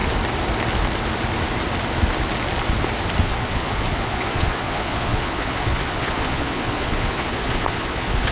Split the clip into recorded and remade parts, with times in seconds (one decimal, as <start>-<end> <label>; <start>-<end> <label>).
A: 0.0-3.2 recorded; 3.2-8.3 remade